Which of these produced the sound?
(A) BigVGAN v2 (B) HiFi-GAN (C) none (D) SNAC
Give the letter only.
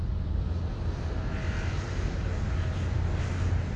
C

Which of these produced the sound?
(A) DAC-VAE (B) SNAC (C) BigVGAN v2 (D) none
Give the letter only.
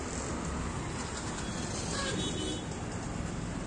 D